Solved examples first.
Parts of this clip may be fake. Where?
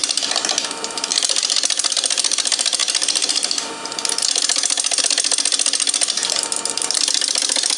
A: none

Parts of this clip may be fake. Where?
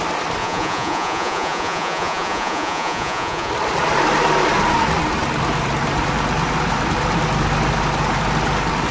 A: 0.4-3.5 (vocoder, Vocos)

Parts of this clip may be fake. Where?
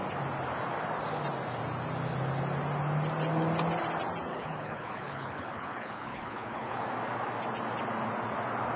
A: 4.3-6.9 (codec, HILCodec)